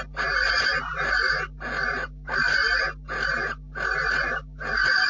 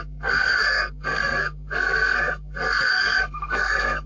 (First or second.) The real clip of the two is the first